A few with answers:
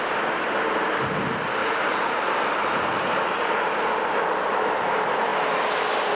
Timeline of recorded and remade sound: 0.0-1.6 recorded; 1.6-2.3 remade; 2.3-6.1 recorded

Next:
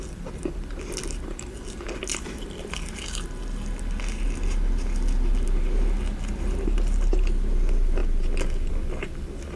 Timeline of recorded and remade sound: 0.0-9.6 recorded